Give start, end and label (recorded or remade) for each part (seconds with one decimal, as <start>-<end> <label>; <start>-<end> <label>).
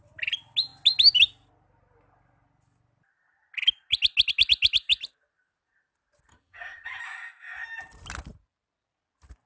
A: 0.0-6.3 recorded; 6.3-7.0 remade; 7.0-9.5 recorded